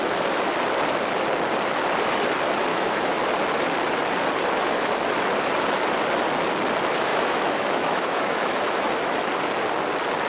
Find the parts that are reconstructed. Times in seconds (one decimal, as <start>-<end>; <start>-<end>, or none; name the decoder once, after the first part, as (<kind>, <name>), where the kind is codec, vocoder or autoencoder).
2.7-3.2 (autoencoder, DAC-VAE); 7.1-8.9